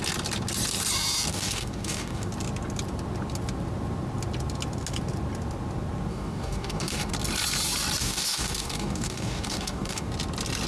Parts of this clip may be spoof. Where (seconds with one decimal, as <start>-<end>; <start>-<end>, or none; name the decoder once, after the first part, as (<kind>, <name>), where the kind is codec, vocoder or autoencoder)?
1.3-2.3 (codec, DAC); 6.1-7.1; 8.0-10.1